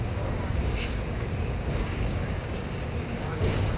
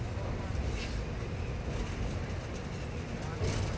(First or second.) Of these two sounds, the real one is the second